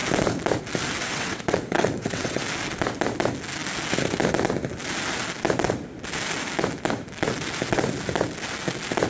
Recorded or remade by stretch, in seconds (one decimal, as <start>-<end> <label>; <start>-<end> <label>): 0.0-1.0 recorded; 1.0-2.4 remade; 2.4-9.1 recorded